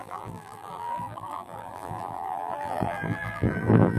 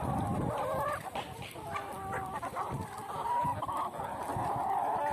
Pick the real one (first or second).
second